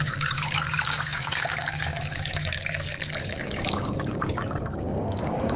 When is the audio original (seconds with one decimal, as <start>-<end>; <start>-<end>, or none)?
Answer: none